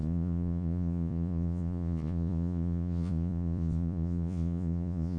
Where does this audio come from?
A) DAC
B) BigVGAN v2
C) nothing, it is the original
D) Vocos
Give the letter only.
D